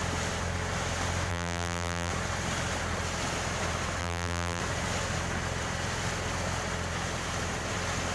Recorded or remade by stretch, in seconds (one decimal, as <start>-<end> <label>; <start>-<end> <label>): 0.0-1.3 recorded; 1.3-2.1 remade; 2.1-4.0 recorded; 4.0-4.6 remade; 4.6-8.1 recorded